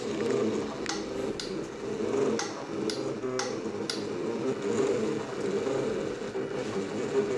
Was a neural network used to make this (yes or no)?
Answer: no